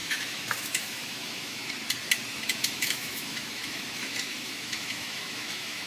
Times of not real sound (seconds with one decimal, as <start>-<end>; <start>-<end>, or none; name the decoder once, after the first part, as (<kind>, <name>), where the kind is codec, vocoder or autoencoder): 0.0-1.7 (autoencoder, DAC-VAE); 2.3-5.9